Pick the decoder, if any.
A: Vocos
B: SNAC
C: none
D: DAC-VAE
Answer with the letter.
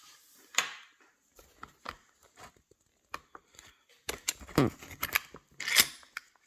C